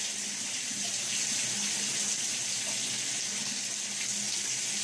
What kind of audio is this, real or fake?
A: real